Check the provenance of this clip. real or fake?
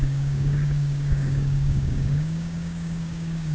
fake